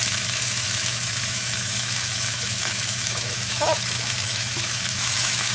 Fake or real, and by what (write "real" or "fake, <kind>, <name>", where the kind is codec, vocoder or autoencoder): fake, autoencoder, DAC-VAE